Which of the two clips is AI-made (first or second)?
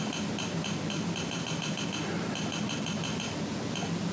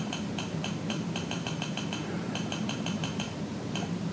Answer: second